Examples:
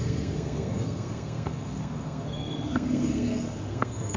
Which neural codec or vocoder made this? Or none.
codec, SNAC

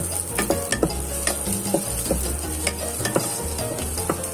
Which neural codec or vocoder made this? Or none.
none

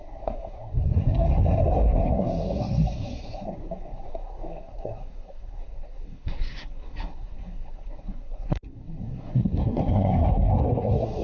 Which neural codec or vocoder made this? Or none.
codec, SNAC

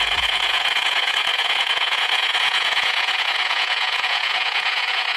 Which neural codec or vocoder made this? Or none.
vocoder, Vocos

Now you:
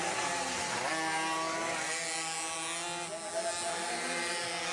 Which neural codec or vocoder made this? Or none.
none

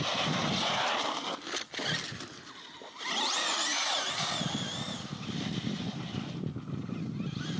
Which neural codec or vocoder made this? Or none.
vocoder, BigVGAN v2